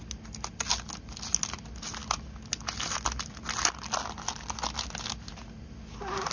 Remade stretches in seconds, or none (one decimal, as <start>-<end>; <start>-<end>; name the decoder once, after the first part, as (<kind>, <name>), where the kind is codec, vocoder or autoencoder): none